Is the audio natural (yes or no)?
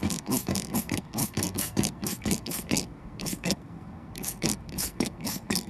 no